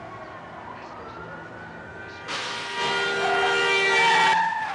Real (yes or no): yes